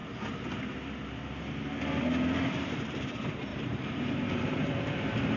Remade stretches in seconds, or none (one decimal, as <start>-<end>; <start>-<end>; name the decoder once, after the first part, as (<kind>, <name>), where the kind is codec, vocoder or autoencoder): 2.5-5.4 (vocoder, BigVGAN v2)